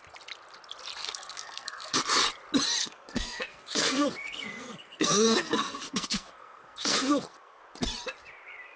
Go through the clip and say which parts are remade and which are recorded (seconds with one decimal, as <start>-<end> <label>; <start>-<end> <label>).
0.0-1.0 recorded; 1.0-2.0 remade; 2.0-2.8 recorded; 2.8-7.6 remade; 7.6-8.8 recorded